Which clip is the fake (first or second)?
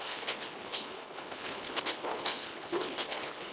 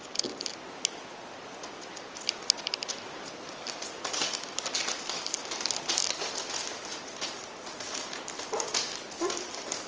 first